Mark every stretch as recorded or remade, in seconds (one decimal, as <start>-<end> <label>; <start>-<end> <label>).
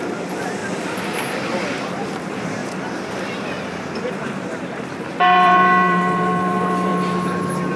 0.0-0.6 remade; 0.6-1.9 recorded; 1.9-2.6 remade; 2.6-4.1 recorded; 4.1-6.9 remade; 6.9-7.8 recorded